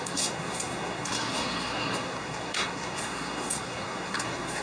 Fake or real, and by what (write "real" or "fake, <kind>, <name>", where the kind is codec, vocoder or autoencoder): fake, codec, SNAC